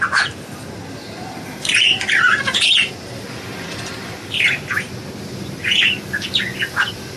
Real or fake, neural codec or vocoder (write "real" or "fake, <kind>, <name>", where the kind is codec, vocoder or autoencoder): real